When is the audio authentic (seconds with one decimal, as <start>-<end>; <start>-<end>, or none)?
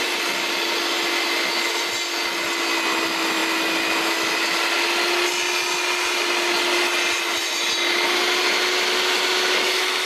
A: 0.0-10.1